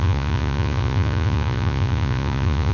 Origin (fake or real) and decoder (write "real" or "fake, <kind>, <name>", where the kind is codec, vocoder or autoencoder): fake, vocoder, Vocos